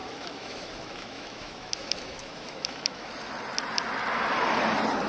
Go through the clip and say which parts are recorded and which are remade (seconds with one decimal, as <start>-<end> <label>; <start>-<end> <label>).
0.0-3.1 remade; 3.1-5.1 recorded